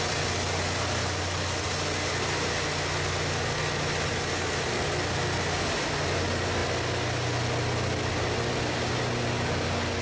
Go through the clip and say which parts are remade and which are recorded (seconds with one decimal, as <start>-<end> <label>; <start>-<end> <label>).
0.0-10.0 recorded